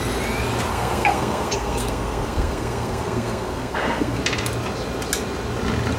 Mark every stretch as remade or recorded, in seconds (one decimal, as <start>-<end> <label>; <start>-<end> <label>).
0.0-0.7 recorded; 0.7-4.2 remade; 4.2-6.0 recorded